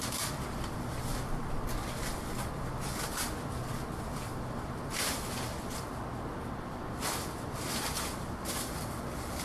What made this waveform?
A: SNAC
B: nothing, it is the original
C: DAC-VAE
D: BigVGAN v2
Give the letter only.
B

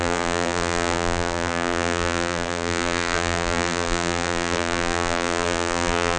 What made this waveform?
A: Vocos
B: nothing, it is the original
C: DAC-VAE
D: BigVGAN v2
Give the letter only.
D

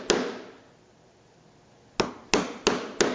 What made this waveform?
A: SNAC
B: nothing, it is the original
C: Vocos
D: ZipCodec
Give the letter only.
B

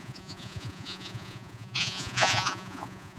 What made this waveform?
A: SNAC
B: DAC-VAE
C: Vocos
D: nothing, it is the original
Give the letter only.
C